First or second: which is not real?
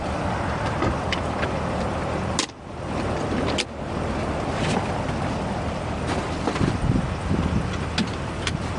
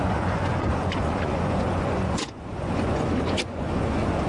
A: second